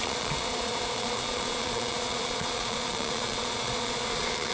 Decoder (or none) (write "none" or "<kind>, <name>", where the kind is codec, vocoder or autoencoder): vocoder, Vocos